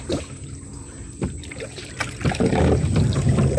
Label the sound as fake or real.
fake